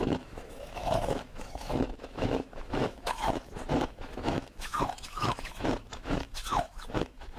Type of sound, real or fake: fake